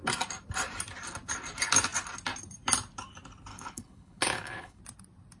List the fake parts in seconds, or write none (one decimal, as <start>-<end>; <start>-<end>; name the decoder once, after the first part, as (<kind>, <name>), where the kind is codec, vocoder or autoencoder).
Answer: 3.5-4.8 (codec, HILCodec)